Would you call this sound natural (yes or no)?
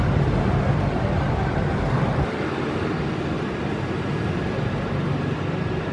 yes